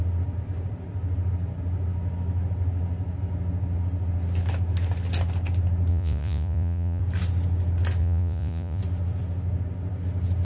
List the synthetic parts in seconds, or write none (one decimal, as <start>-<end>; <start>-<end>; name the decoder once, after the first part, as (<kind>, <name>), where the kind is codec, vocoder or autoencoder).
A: 5.9-7.0 (vocoder, Vocos); 8.0-8.8